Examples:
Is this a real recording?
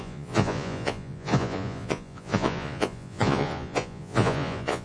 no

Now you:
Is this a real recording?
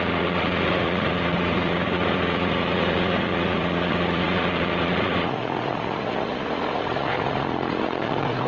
no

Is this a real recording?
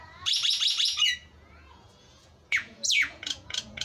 no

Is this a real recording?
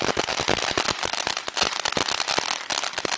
yes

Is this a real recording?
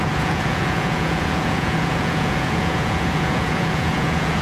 no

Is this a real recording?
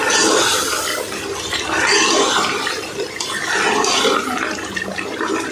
yes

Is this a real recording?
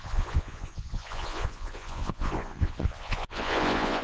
no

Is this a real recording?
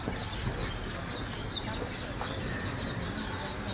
yes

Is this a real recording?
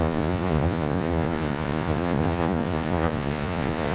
no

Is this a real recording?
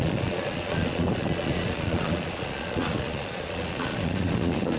no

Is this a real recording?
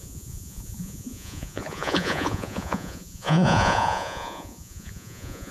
no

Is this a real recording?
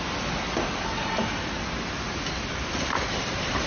yes